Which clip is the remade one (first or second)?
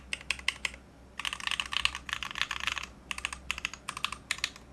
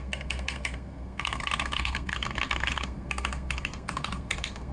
second